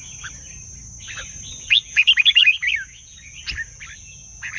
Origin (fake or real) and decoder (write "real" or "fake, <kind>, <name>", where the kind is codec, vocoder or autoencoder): real